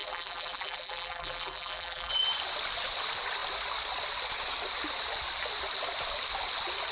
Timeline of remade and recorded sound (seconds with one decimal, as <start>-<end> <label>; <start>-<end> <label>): 0.0-2.1 remade; 2.1-6.9 recorded